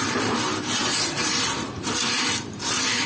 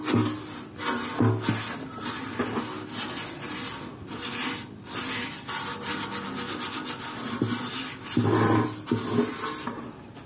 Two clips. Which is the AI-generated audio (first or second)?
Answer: first